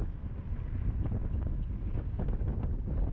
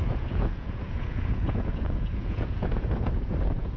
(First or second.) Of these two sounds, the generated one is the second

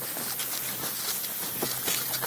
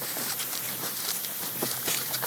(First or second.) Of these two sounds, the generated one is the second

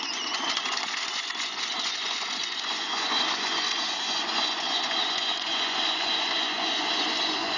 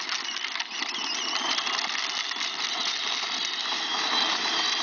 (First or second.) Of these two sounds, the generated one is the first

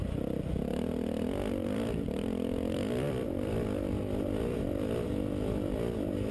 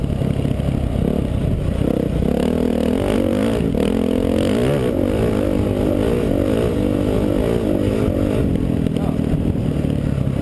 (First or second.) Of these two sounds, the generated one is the first